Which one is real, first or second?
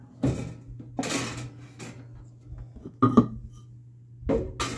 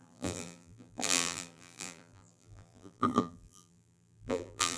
first